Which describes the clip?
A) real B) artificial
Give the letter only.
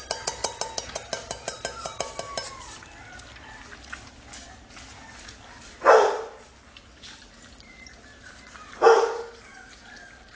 A